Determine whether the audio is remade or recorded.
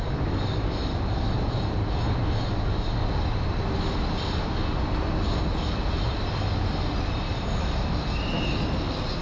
recorded